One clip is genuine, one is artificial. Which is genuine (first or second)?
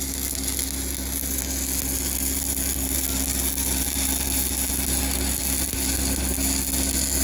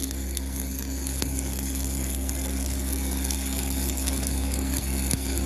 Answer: first